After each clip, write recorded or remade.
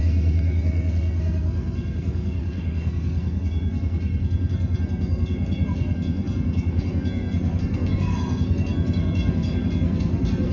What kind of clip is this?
remade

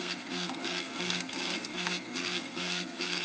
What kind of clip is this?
remade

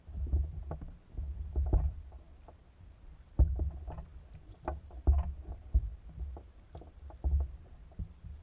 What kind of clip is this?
recorded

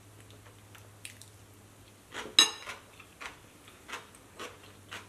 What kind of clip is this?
recorded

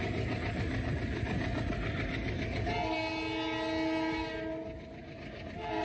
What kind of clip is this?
recorded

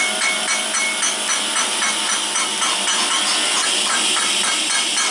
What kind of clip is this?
recorded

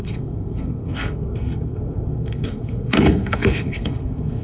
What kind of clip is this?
remade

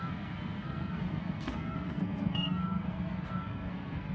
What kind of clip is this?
remade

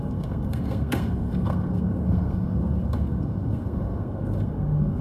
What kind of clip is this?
remade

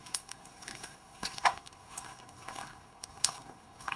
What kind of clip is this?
remade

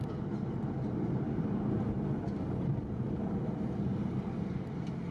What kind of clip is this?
recorded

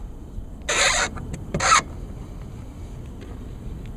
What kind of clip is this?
recorded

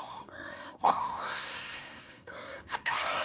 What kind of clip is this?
remade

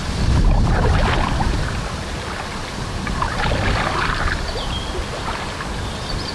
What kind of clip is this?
recorded